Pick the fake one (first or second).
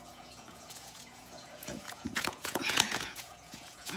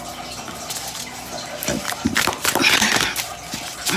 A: first